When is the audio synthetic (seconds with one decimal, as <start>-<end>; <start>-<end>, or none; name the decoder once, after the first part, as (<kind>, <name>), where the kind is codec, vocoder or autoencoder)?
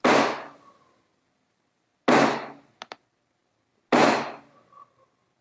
none